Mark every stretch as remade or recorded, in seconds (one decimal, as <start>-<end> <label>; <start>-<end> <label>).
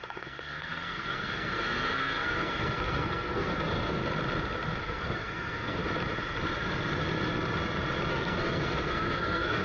0.0-4.0 remade; 4.0-4.8 recorded; 4.8-5.8 remade; 5.8-8.1 recorded; 8.1-9.6 remade